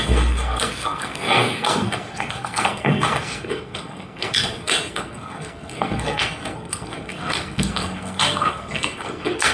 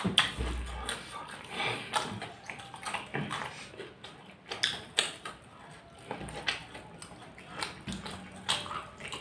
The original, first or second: second